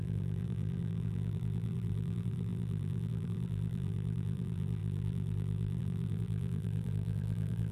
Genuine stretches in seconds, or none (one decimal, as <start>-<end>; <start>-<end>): none